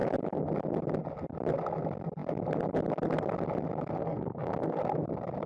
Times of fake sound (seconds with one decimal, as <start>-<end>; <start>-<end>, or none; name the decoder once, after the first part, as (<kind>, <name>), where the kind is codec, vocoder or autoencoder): 4.0-4.8 (codec, SNAC)